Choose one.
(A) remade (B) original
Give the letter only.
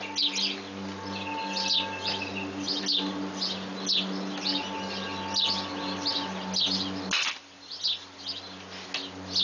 B